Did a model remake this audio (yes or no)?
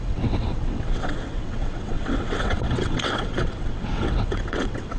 yes